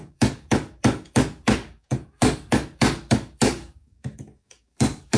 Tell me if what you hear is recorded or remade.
remade